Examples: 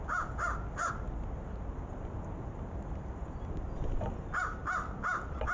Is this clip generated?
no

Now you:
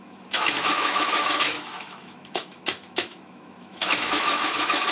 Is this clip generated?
yes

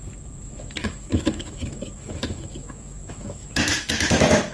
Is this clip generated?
yes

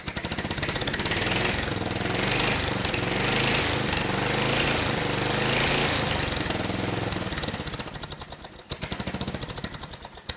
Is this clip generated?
no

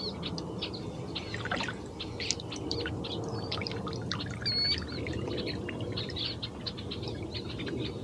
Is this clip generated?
no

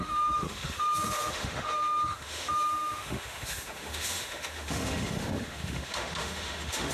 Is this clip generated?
yes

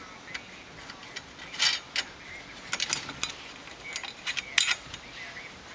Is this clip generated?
no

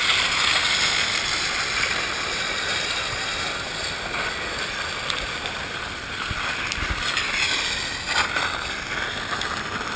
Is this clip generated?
no